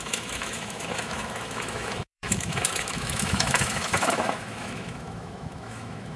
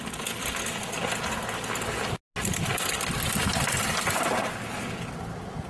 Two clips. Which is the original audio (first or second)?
second